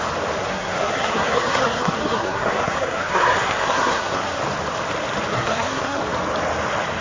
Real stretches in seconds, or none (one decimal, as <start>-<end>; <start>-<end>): 0.0-0.4; 4.4-5.3; 6.0-7.0